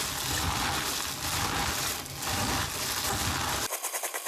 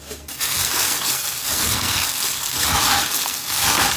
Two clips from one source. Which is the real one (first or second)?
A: first